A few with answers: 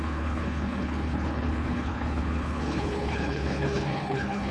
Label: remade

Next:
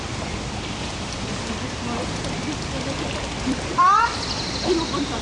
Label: recorded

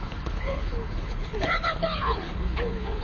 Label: remade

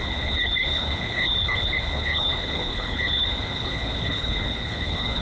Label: remade